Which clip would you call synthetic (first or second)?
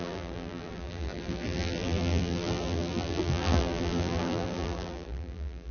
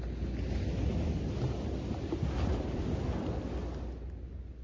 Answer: first